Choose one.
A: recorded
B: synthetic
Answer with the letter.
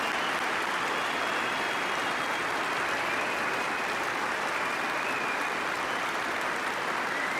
A